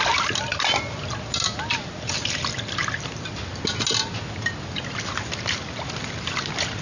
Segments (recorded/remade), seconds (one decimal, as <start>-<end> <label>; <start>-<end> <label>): 0.0-6.8 recorded